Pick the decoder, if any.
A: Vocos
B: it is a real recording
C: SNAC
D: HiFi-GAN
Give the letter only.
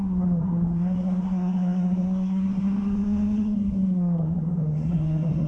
C